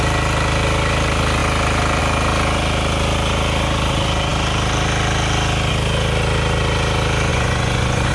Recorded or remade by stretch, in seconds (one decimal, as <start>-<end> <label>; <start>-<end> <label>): 0.0-7.3 recorded; 7.3-8.1 remade